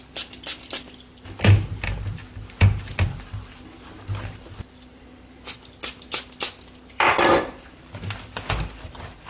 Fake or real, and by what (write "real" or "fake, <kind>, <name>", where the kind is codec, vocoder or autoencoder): fake, vocoder, BigVGAN v2